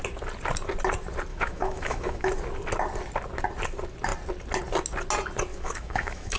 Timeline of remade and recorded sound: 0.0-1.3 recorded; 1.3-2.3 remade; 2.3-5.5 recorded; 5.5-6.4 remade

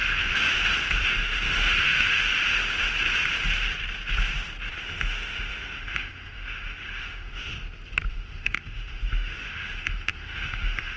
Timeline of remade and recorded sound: 0.0-0.5 remade; 0.5-1.0 recorded; 1.0-2.3 remade; 2.3-4.7 recorded; 4.7-7.5 remade; 7.5-8.1 recorded; 8.1-11.0 remade

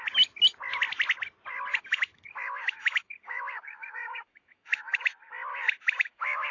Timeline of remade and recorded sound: 0.0-1.7 recorded; 1.7-5.1 remade; 5.1-5.5 recorded; 5.5-6.5 remade

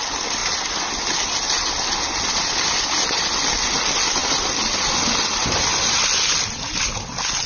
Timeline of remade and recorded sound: 0.0-7.5 recorded

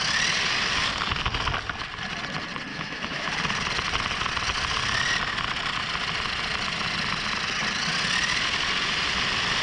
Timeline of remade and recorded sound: 0.0-2.7 recorded; 2.7-3.3 remade; 3.3-9.6 recorded

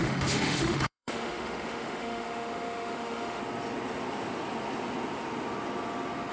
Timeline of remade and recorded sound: 0.0-3.4 remade; 3.4-6.3 recorded

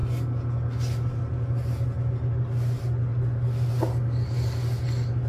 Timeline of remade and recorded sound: 0.0-5.3 recorded